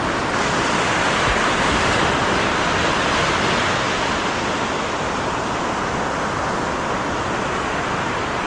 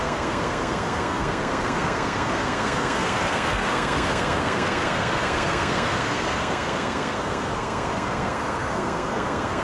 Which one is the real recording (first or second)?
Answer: first